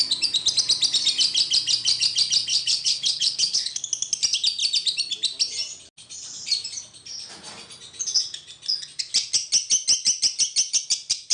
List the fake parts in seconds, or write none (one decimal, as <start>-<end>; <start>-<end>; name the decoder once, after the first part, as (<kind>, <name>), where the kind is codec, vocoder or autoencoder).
2.5-3.8 (codec, HILCodec)